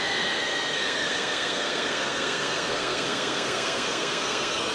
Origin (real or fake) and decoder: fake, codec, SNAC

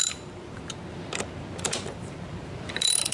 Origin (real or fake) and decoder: fake, vocoder, BigVGAN v2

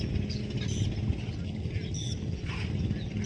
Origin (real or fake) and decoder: real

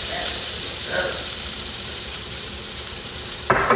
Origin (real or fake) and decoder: fake, vocoder, BigVGAN v2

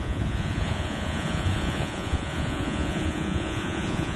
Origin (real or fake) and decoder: fake, vocoder, Vocos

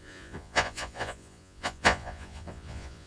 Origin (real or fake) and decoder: fake, vocoder, Vocos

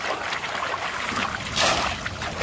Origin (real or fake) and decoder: real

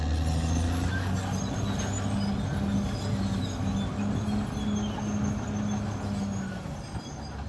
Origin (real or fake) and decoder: real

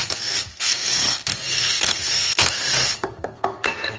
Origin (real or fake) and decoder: fake, codec, SNAC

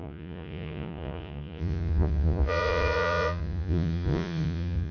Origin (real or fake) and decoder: fake, vocoder, Vocos